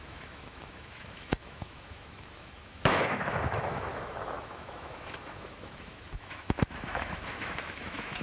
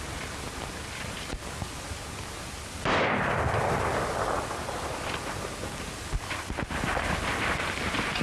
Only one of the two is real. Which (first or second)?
second